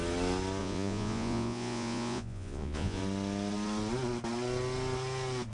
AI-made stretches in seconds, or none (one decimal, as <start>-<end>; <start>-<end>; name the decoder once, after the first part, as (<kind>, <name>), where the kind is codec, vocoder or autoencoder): 0.6-3.0 (vocoder, Vocos)